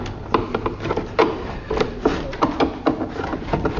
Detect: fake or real real